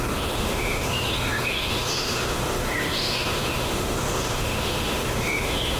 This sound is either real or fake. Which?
fake